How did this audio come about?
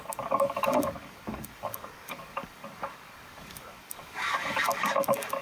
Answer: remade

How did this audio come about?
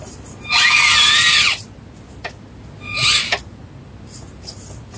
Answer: recorded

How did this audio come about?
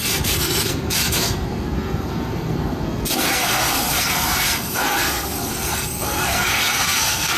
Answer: remade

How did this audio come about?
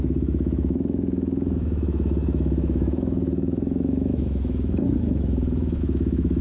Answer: remade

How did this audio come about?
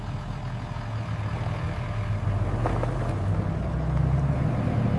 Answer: recorded